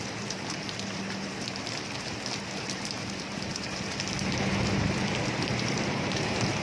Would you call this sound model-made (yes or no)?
yes